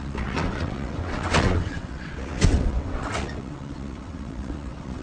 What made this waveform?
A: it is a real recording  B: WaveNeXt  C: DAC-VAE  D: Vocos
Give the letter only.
B